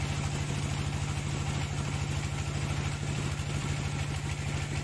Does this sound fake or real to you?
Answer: real